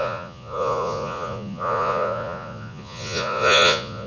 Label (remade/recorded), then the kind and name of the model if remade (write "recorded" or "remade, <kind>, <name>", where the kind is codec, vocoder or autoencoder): remade, vocoder, Vocos